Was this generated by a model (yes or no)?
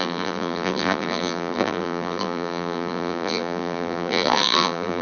yes